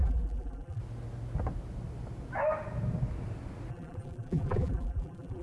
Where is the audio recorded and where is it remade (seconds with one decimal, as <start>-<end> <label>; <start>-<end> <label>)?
0.0-0.8 remade; 0.8-3.7 recorded; 3.7-5.4 remade